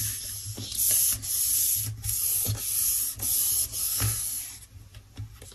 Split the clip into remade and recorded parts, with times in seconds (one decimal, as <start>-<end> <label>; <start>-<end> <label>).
0.0-3.8 recorded; 3.8-4.4 remade; 4.4-5.5 recorded